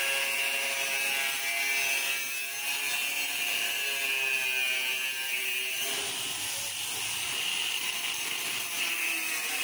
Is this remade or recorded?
recorded